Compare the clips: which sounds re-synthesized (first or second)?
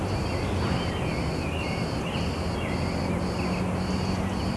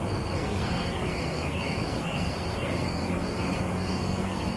second